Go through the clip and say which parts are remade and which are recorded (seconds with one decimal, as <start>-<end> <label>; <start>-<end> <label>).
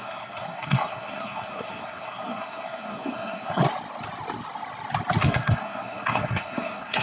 0.0-3.6 remade; 3.6-5.2 recorded; 5.2-7.0 remade